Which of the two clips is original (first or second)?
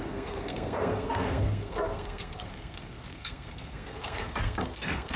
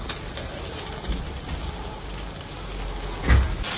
second